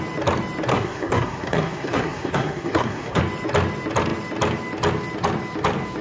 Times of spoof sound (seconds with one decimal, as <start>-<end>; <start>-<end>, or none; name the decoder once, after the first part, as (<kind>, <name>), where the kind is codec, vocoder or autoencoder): 0.7-3.2 (codec, SNAC)